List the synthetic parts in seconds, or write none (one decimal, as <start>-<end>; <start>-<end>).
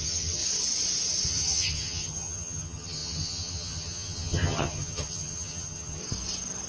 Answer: 0.0-0.4; 1.3-6.0